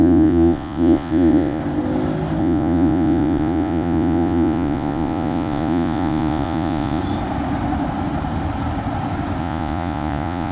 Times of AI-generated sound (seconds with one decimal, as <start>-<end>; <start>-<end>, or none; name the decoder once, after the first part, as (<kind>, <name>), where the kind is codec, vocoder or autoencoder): 0.0-1.6 (vocoder, Vocos); 2.4-7.0; 9.4-10.5